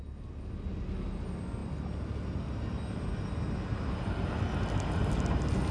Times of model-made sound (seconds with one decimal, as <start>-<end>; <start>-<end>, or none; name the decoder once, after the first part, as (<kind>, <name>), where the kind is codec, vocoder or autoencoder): none